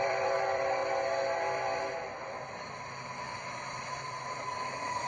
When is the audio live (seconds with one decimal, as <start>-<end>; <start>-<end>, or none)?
0.8-3.6